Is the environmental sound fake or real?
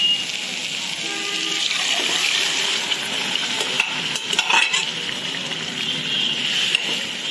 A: real